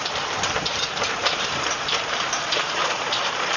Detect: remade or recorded remade